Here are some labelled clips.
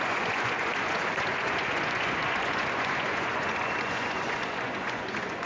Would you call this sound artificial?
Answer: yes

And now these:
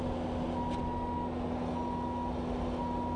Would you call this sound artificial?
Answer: no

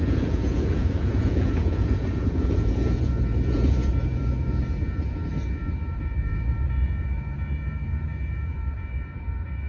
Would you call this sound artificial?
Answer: yes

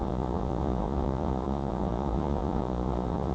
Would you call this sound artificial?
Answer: yes